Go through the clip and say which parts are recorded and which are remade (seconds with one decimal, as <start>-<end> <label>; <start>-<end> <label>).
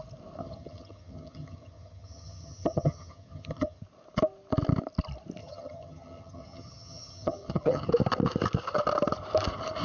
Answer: 0.0-0.4 recorded; 0.4-3.8 remade; 3.8-5.4 recorded; 5.4-7.9 remade; 7.9-9.8 recorded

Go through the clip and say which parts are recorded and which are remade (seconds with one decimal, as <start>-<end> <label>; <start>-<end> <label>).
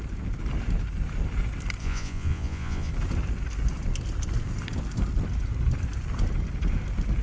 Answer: 0.0-1.8 recorded; 1.8-2.9 remade; 2.9-7.2 recorded